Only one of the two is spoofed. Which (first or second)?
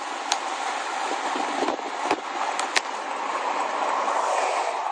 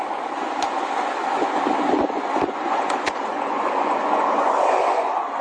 second